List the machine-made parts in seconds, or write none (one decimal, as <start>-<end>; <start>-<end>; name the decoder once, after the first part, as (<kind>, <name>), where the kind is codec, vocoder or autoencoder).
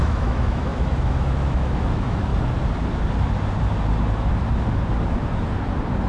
0.0-2.3 (autoencoder, DAC-VAE)